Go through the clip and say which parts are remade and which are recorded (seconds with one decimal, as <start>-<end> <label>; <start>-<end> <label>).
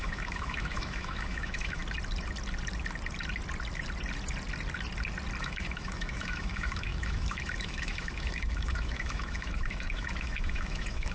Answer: 0.0-1.8 remade; 1.8-5.4 recorded; 5.4-11.1 remade